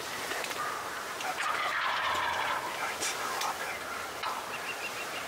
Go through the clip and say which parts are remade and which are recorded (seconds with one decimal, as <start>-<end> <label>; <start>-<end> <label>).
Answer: 0.0-1.3 remade; 1.3-4.5 recorded; 4.5-5.3 remade